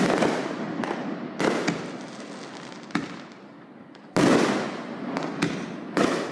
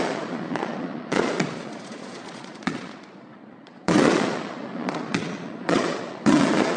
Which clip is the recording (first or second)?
first